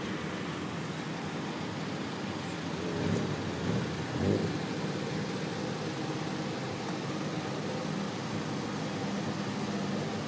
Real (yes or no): yes